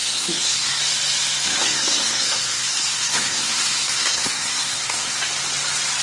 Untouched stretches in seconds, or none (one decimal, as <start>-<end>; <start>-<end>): 0.8-1.6; 5.2-6.0